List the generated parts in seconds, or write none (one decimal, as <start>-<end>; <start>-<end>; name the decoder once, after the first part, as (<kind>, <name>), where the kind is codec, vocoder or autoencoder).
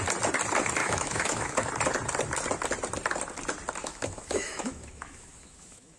0.8-1.7 (autoencoder, DAC-VAE); 3.8-6.0